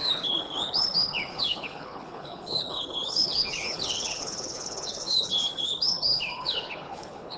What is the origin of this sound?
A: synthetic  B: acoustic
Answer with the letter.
A